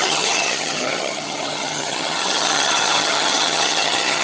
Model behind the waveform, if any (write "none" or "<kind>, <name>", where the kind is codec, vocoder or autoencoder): vocoder, HiFi-GAN